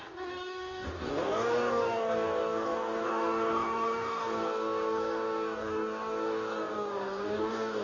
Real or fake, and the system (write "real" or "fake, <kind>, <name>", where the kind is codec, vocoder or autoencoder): fake, codec, DAC